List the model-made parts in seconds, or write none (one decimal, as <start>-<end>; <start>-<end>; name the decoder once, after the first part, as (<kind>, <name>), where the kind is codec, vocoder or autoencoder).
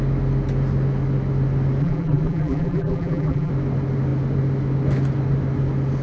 1.8-3.5 (vocoder, BigVGAN v2)